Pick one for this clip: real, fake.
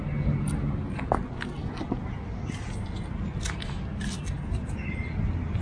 real